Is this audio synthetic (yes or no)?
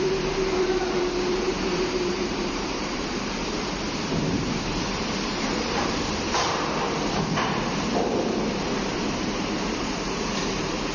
yes